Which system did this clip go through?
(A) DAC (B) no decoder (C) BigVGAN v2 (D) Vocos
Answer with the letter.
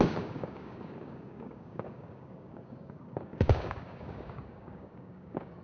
A